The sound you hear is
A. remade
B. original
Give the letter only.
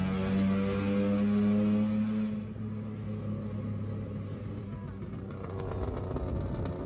B